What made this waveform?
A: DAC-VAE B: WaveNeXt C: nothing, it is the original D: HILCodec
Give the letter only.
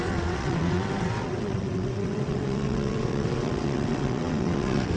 B